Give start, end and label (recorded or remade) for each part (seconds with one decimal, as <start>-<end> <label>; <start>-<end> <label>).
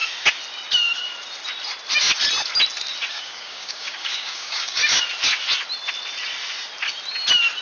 0.0-3.1 recorded; 3.1-4.8 remade; 4.8-7.6 recorded